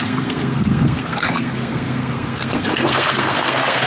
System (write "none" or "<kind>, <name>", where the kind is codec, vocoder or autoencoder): codec, SNAC